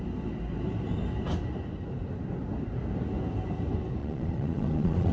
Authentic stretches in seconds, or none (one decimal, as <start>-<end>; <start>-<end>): 0.0-4.0